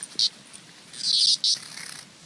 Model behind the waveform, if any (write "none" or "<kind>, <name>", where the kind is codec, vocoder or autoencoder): none